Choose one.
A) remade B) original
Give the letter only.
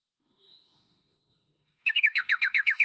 A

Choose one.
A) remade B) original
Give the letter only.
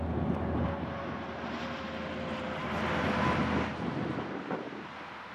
B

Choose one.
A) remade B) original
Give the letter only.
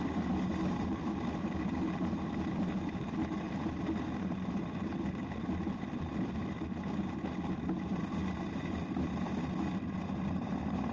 B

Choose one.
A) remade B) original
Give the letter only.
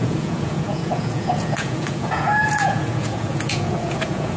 A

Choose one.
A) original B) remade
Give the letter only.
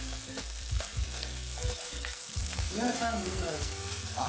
B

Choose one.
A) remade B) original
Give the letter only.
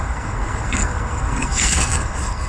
A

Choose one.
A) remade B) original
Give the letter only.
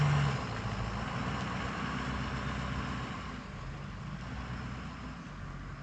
B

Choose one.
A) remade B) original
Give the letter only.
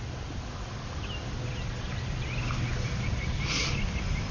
B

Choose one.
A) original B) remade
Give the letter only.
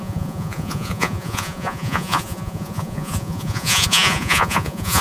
B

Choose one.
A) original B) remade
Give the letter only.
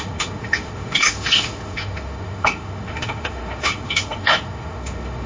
B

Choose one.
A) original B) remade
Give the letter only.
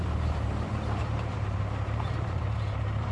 B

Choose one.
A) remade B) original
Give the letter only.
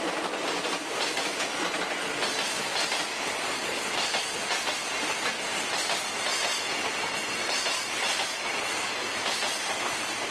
B